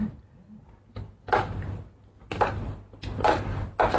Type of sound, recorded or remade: recorded